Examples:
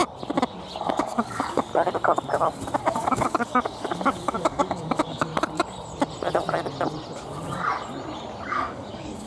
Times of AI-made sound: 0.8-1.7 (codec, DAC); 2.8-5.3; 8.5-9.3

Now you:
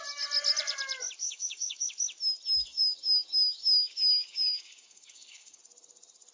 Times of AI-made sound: 1.2-1.9 (codec, DAC); 2.7-5.6

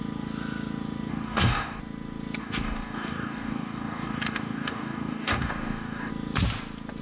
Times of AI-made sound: 1.1-1.8 (codec, DAC); 2.4-6.1

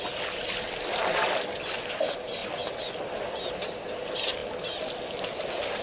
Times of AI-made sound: none

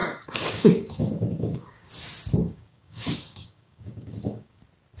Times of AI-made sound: 0.0-1.9 (codec, DAC); 2.4-4.6

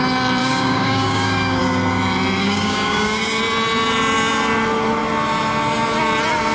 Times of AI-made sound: 0.4-1.6 (codec, DAC); 2.4-3.4